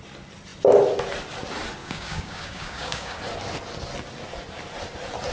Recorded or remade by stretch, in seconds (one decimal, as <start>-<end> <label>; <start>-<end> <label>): 0.0-1.8 recorded; 1.8-3.2 remade; 3.2-5.3 recorded